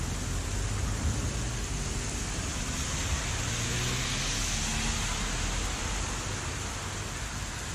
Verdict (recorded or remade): recorded